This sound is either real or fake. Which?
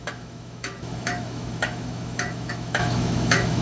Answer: fake